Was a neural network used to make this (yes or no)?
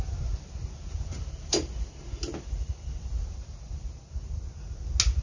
no